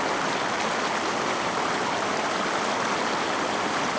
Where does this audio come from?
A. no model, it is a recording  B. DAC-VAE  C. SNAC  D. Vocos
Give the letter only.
A